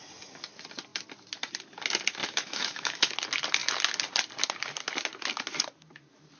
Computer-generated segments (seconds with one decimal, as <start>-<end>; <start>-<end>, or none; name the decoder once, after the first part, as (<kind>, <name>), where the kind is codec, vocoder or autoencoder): 2.2-3.1 (autoencoder, DAC-VAE)